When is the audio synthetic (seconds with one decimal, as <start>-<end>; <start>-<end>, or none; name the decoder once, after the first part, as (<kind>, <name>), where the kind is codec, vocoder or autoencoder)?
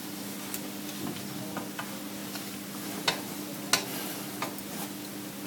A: none